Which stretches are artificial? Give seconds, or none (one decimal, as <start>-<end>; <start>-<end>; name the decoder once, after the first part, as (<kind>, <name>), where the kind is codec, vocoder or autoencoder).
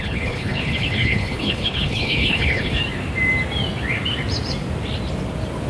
0.0-2.8 (codec, HILCodec)